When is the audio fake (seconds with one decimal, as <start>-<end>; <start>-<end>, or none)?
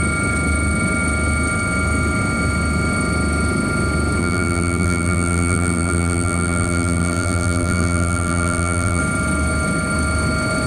4.2-9.0